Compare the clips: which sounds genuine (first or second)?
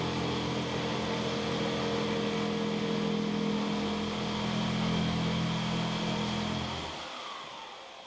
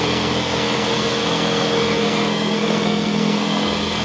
first